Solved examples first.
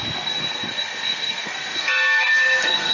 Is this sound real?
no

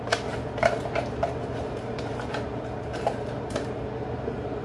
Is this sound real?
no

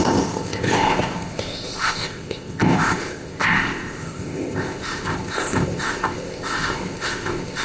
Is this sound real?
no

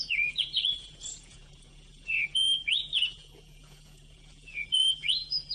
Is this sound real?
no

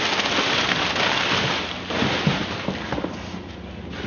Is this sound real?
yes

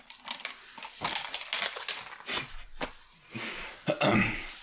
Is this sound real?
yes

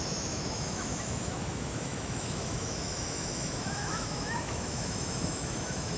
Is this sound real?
no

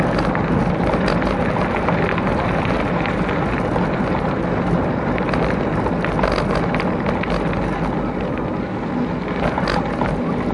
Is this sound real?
yes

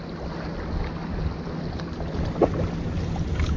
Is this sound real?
yes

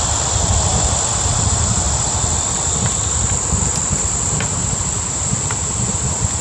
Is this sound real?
yes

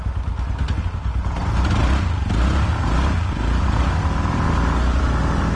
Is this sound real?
yes